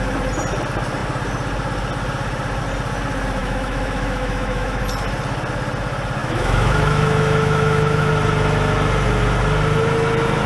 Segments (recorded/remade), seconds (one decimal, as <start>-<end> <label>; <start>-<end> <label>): 0.0-3.4 recorded; 3.4-4.8 remade; 4.8-6.2 recorded; 6.2-8.1 remade; 8.1-10.5 recorded